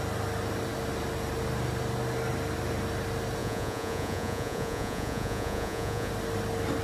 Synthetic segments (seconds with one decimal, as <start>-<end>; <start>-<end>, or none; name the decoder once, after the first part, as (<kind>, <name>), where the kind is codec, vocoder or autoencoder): 3.4-6.1 (vocoder, Vocos)